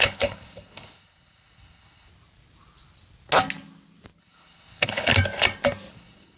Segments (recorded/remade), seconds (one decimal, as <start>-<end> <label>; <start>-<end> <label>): 0.0-2.1 remade; 2.1-4.2 recorded; 4.2-5.1 remade; 5.1-5.9 recorded; 5.9-6.4 remade